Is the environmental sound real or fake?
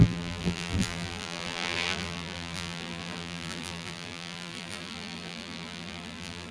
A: fake